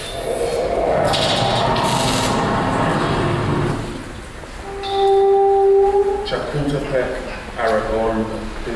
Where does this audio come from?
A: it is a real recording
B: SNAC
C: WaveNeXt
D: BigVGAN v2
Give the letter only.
A